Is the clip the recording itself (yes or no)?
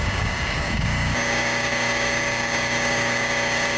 no